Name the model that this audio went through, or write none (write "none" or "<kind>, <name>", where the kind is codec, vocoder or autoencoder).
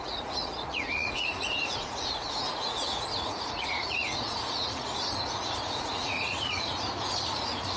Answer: vocoder, Vocos